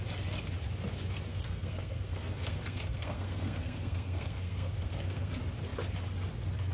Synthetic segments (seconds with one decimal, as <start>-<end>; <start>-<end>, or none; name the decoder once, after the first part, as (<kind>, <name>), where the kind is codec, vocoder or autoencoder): 1.3-5.3 (codec, SNAC)